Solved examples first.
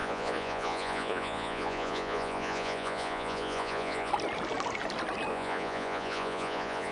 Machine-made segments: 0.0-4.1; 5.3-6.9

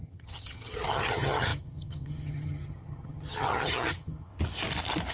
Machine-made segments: 0.0-4.3

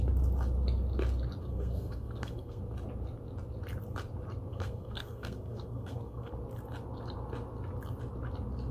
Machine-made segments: 1.4-2.6; 4.5-6.3